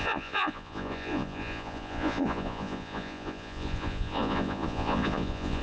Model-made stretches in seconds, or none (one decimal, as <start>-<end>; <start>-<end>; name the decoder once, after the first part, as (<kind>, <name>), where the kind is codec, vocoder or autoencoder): 0.0-5.6 (vocoder, Vocos)